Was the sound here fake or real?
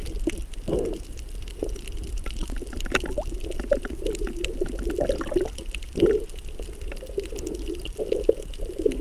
fake